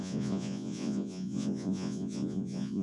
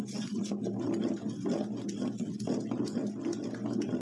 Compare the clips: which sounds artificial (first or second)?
first